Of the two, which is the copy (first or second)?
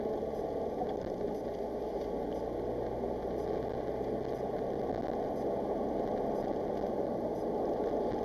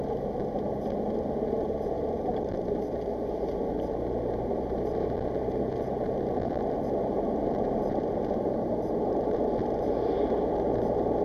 second